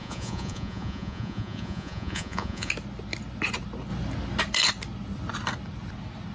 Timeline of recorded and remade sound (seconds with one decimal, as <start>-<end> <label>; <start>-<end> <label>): 0.0-2.7 remade; 2.7-6.3 recorded